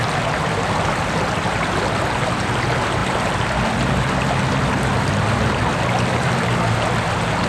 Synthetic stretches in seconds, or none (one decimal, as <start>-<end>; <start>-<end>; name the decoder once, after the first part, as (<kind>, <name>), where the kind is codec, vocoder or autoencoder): none